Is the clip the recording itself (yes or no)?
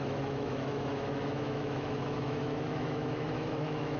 no